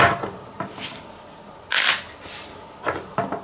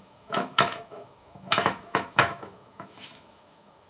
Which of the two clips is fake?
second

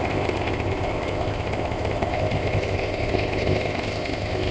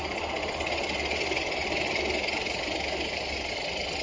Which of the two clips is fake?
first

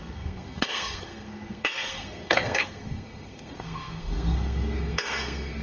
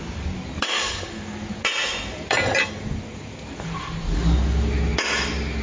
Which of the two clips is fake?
first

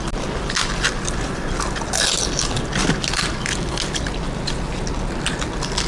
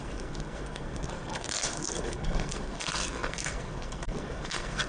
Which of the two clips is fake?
second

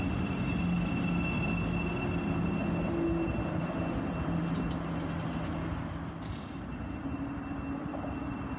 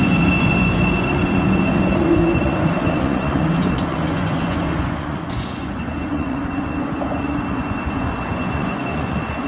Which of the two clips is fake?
second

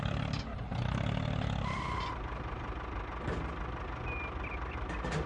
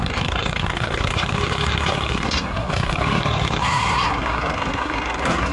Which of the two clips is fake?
second